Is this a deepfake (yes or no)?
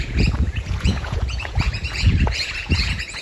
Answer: yes